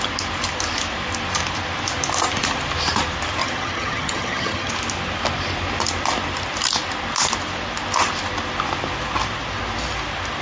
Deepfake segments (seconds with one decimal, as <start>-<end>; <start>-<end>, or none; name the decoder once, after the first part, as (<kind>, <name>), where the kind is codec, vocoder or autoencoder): 3.4-4.7 (vocoder, HiFi-GAN)